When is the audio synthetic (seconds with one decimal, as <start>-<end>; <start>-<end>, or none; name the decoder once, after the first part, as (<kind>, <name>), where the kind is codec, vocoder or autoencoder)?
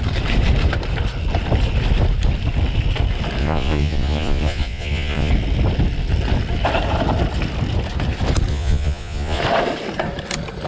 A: 3.4-5.3 (vocoder, Vocos); 8.5-9.4